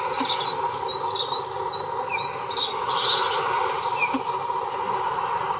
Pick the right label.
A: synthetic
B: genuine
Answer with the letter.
B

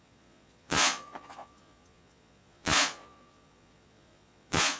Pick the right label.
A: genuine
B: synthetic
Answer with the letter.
B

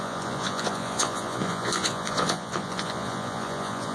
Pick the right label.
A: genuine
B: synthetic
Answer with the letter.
B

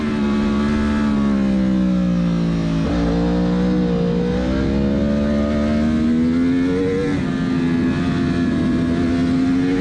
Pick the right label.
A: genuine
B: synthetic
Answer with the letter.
A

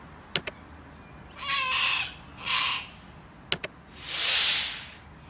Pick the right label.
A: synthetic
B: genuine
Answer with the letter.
B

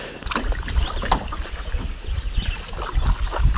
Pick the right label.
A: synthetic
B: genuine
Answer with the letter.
B